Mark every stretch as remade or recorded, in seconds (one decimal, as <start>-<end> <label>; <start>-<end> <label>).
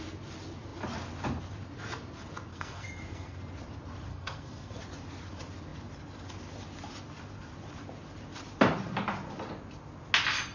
0.0-2.5 recorded; 2.5-3.4 remade; 3.4-4.1 recorded; 4.1-4.8 remade; 4.8-10.5 recorded